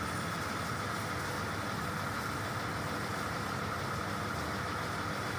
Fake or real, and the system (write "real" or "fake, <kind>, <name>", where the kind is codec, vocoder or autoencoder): real